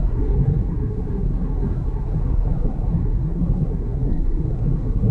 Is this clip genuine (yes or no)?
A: no